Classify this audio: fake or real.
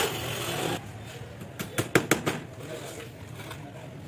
real